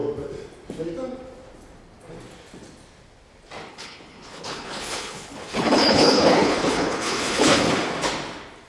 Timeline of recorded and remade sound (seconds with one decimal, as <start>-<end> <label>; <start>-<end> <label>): 0.0-3.7 recorded; 3.7-7.7 remade; 7.7-8.7 recorded